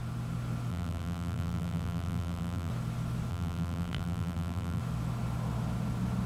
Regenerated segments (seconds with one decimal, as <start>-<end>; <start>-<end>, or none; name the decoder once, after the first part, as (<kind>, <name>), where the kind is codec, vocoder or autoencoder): 0.7-2.7 (vocoder, BigVGAN v2); 3.3-4.8